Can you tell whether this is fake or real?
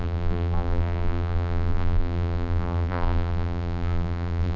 fake